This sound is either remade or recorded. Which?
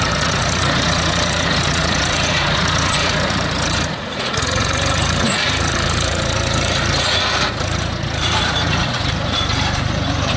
remade